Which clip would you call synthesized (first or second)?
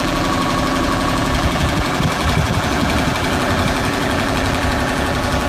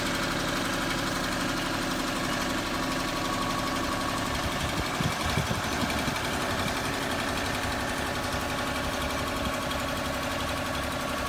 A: first